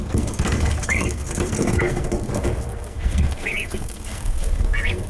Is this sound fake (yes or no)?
yes